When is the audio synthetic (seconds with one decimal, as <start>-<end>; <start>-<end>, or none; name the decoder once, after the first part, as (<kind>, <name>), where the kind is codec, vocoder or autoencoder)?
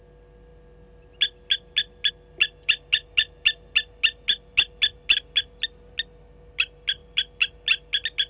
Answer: none